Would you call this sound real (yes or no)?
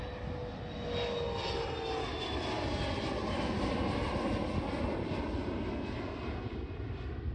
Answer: yes